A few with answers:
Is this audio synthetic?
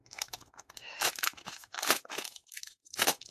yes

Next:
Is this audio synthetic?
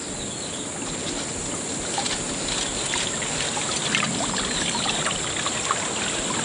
no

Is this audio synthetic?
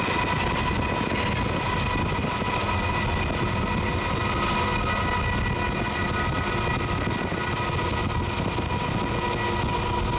no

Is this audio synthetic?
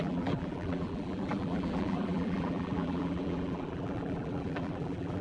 yes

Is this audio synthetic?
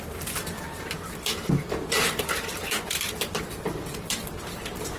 yes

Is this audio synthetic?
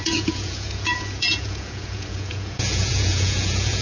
yes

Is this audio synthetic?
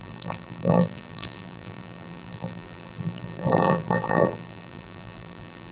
yes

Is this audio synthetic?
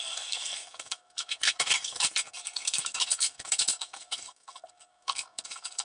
yes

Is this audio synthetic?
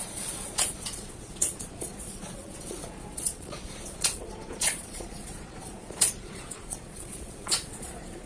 yes